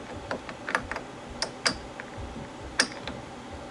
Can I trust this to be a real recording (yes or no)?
yes